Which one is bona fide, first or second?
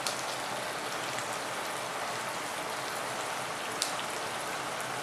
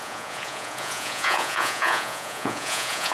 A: first